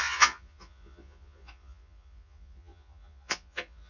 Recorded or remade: remade